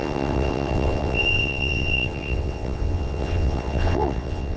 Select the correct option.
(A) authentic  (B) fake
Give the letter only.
B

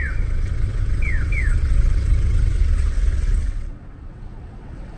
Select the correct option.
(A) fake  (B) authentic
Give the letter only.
A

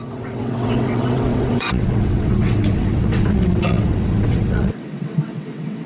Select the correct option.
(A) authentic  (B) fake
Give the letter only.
B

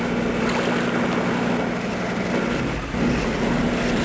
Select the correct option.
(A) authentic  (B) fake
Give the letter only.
A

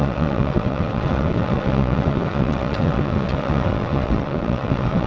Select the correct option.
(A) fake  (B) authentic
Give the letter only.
A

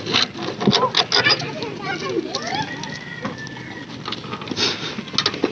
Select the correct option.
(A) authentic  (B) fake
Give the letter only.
A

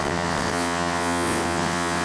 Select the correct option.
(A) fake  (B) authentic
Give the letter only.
A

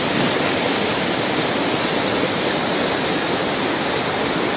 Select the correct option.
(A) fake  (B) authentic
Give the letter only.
B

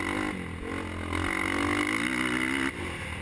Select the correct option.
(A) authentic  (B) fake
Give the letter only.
A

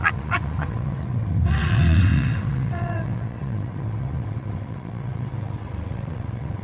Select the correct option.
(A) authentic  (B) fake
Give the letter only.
B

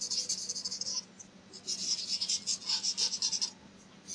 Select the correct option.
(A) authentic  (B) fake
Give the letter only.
A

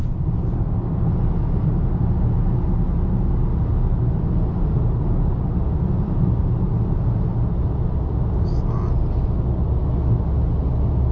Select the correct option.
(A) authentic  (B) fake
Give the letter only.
A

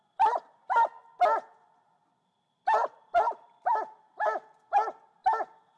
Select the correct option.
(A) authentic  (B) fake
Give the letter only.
A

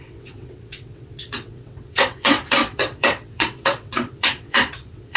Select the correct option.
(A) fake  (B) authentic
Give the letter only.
A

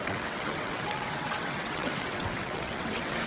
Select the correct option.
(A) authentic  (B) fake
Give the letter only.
B